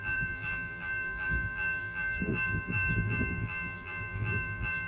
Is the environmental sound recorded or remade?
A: remade